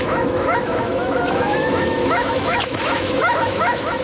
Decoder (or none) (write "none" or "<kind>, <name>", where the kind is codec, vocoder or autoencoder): autoencoder, DAC-VAE